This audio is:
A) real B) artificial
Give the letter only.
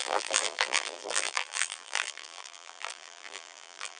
B